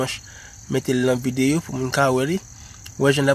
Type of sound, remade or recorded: recorded